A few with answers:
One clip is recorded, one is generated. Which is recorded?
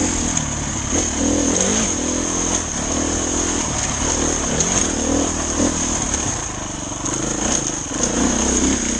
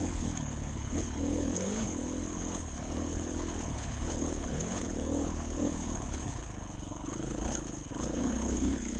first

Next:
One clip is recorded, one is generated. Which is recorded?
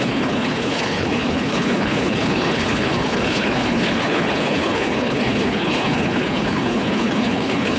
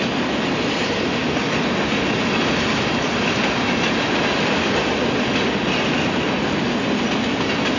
second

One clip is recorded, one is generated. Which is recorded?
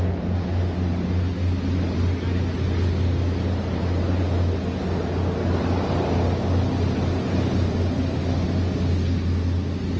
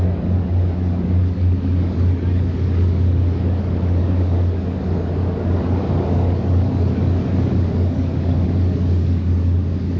first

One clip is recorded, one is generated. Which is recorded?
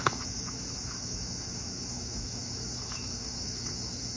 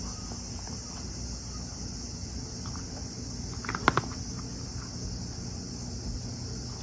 second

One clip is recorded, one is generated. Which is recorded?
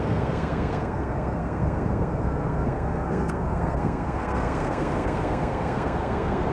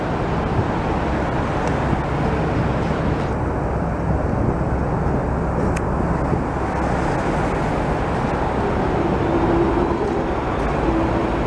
second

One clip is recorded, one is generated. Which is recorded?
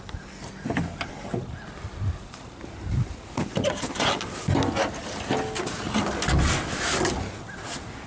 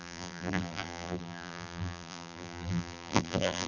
first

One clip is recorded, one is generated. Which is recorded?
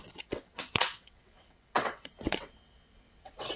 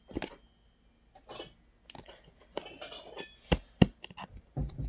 second